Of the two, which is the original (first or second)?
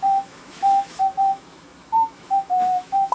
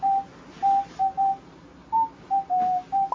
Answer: second